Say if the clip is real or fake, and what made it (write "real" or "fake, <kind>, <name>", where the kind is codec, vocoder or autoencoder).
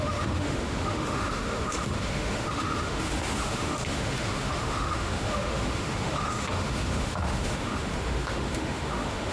fake, autoencoder, DAC-VAE